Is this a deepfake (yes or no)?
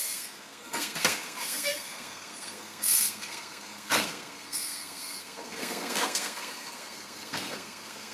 yes